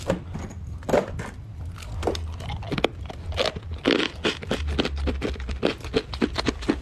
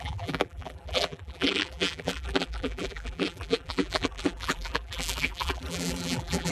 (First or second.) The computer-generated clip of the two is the second